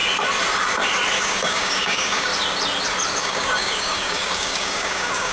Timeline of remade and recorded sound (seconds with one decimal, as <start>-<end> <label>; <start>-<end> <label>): 0.0-1.2 recorded; 1.2-2.3 remade; 2.3-3.2 recorded; 3.2-5.3 remade